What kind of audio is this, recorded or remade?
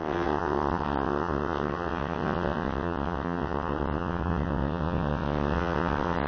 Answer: remade